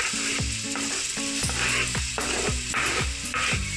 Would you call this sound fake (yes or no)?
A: no